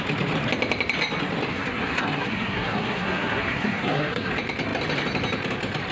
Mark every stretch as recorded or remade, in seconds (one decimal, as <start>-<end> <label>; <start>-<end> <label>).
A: 0.0-1.5 recorded; 1.5-4.3 remade; 4.3-5.9 recorded